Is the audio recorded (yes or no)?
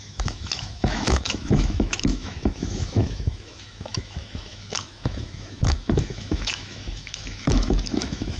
no